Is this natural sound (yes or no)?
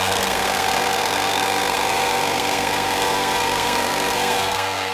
no